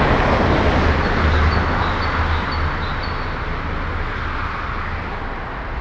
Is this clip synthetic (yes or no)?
no